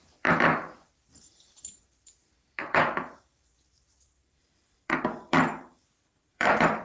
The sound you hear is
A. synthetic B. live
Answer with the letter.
A